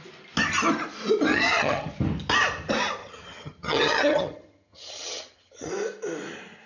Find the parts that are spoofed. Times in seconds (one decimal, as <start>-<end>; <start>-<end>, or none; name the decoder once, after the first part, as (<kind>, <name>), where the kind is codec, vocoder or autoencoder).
1.3-1.9 (vocoder, HiFi-GAN); 3.0-5.7